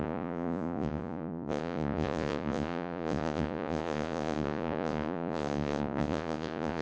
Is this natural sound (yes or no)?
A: no